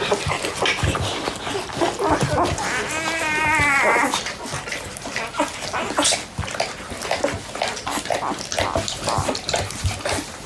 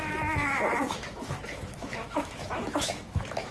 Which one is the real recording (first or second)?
first